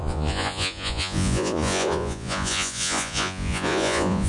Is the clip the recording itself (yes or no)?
no